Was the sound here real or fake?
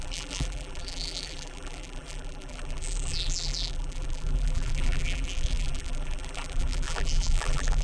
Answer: fake